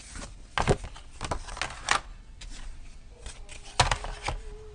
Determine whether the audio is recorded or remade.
recorded